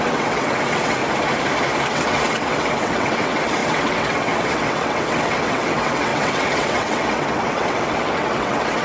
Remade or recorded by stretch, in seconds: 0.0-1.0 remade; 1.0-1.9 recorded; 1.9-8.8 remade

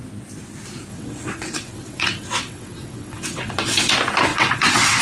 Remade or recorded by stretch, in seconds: 0.0-0.9 recorded; 0.9-3.9 remade; 3.9-4.3 recorded; 4.3-5.0 remade